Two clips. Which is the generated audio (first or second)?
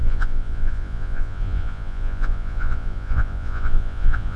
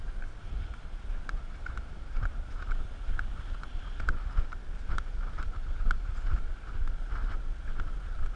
first